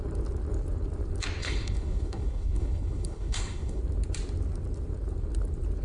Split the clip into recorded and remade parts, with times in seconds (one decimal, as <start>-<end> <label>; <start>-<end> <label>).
0.0-1.4 recorded; 1.4-3.8 remade; 3.8-5.8 recorded